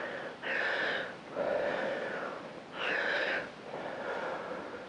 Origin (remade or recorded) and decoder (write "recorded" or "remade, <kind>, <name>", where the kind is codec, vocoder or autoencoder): recorded